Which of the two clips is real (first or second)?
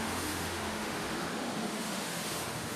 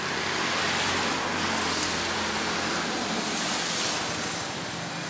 second